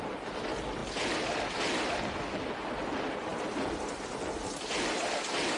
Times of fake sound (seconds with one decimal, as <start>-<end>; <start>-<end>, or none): none